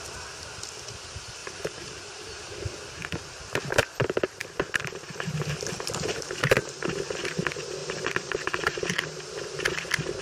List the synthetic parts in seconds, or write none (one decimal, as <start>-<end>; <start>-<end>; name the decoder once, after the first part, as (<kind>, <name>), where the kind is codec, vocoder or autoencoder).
1.4-2.2 (vocoder, BigVGAN v2); 7.8-9.2